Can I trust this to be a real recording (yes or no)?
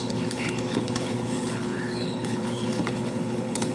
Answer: no